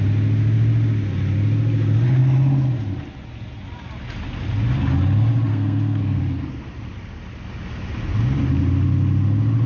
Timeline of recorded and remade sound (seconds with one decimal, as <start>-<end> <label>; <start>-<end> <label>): 0.0-5.5 recorded; 5.5-6.2 remade; 6.2-9.7 recorded